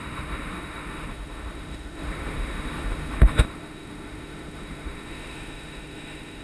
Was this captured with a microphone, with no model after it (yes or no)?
no